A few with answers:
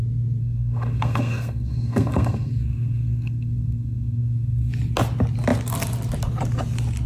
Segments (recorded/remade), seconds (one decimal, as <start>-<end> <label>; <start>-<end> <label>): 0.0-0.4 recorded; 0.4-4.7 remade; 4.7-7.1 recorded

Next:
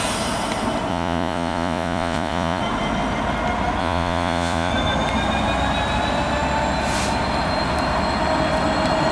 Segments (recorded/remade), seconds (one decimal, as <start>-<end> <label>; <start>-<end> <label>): 0.0-0.9 recorded; 0.9-2.6 remade; 2.6-3.8 recorded; 3.8-4.7 remade; 4.7-9.1 recorded

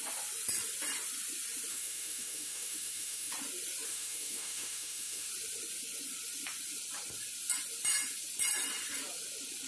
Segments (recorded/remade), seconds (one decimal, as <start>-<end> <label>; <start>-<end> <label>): 0.0-1.7 recorded; 1.7-3.3 remade; 3.3-3.9 recorded; 3.9-5.3 remade; 5.3-9.7 recorded